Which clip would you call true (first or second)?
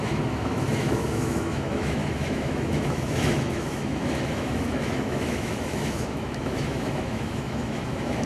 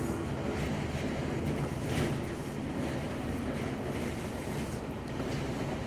second